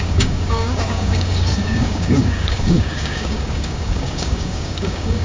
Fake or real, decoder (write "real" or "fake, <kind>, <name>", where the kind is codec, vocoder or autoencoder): fake, codec, DAC